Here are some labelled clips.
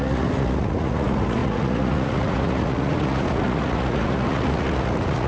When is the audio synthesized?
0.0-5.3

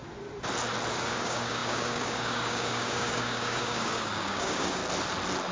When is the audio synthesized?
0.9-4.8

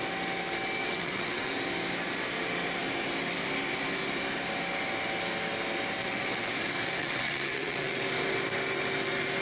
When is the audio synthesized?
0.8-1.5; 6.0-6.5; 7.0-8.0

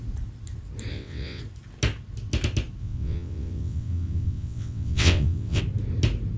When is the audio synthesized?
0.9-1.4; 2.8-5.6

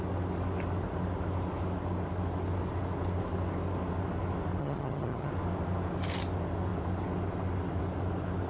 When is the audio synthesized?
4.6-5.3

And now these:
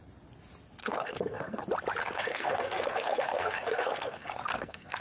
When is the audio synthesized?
0.8-1.6; 2.0-5.0